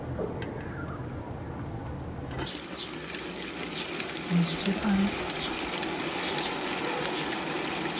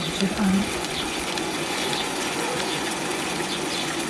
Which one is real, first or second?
first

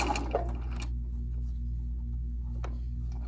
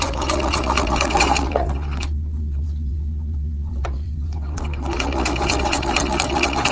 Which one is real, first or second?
first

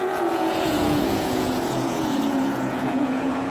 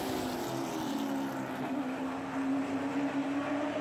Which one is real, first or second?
second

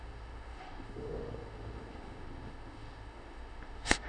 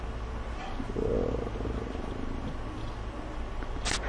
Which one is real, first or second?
second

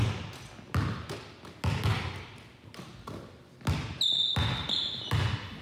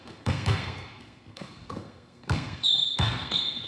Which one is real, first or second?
first